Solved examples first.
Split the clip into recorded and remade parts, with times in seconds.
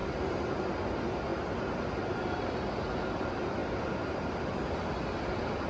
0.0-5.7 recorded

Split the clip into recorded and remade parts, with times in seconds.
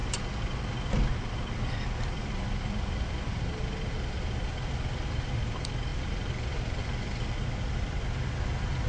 0.0-8.9 recorded